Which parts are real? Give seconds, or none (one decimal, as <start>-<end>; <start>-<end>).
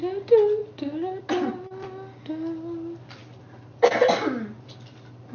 0.0-5.3